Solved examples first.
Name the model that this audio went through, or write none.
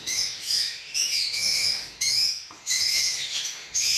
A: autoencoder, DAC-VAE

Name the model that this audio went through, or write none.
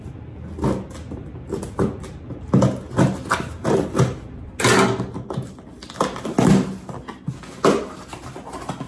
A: none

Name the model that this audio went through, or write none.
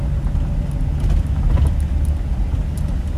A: none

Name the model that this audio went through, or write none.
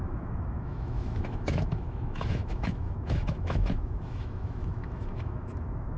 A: autoencoder, DAC-VAE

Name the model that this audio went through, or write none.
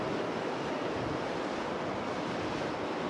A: none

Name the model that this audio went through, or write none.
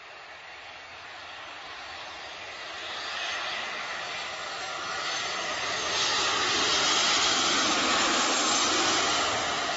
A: none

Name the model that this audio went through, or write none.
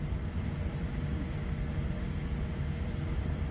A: none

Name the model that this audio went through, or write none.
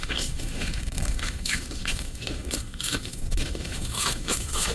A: autoencoder, DAC-VAE